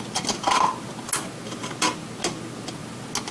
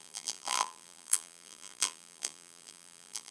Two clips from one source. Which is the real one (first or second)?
first